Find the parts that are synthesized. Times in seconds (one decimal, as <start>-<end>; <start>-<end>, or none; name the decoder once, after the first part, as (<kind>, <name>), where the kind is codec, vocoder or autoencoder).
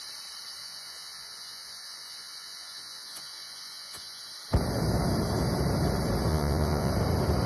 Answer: 0.6-4.2 (vocoder, Vocos); 6.3-6.9